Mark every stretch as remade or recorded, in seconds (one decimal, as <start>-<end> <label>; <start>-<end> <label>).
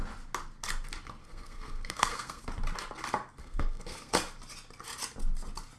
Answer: 0.0-1.2 recorded; 1.2-2.4 remade; 2.4-3.4 recorded; 3.4-4.1 remade; 4.1-5.8 recorded